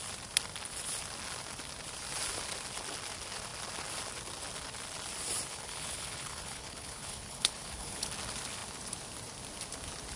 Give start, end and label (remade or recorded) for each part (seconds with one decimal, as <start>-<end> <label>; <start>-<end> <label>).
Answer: 0.0-5.5 recorded; 5.5-8.1 remade; 8.1-10.2 recorded

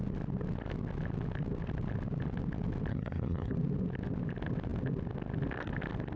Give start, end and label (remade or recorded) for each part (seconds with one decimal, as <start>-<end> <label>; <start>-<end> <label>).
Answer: 0.0-2.9 recorded; 2.9-3.5 remade; 3.5-6.2 recorded

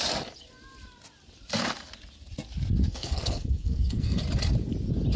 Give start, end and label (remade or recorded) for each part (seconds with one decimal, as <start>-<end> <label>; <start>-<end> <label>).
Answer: 0.0-2.8 recorded; 2.8-4.2 remade; 4.2-5.2 recorded

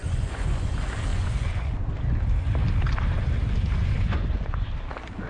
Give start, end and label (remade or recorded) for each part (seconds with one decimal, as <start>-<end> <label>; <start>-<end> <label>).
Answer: 0.0-0.7 remade; 0.7-1.1 recorded; 1.1-1.8 remade; 1.8-3.8 recorded; 3.8-4.8 remade; 4.8-5.3 recorded